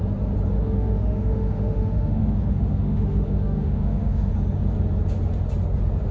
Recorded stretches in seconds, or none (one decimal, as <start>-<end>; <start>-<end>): 0.0-0.6; 4.3-6.1